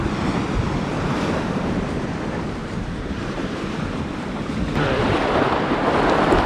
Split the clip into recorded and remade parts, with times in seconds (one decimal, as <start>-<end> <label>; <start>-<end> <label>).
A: 0.0-2.6 recorded; 2.6-4.0 remade; 4.0-6.5 recorded